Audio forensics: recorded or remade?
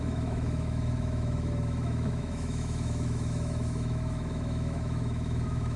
remade